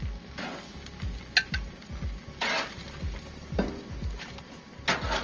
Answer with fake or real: real